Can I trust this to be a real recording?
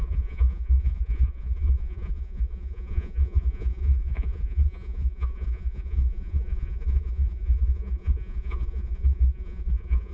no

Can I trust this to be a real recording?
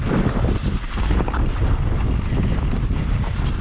yes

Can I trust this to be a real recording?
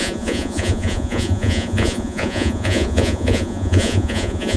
no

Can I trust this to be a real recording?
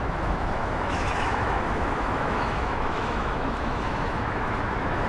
no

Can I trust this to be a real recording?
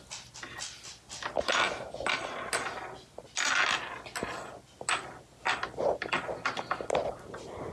yes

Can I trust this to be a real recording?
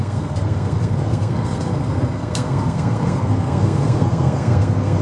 no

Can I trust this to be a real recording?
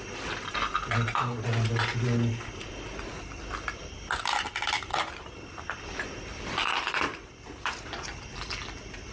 yes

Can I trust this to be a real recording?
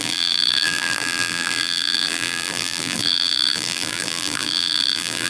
no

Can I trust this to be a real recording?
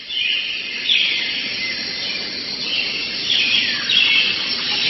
yes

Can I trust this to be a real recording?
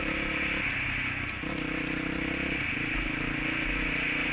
yes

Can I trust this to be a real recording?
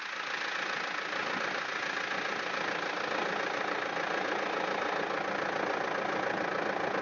yes